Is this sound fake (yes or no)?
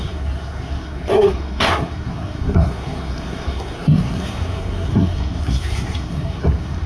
yes